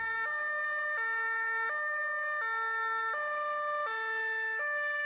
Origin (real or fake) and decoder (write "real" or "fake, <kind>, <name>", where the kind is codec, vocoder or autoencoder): real